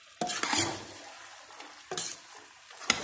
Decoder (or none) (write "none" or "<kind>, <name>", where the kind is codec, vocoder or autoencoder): none